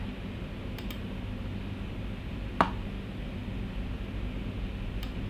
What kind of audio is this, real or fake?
real